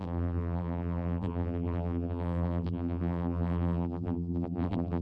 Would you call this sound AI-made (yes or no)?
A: yes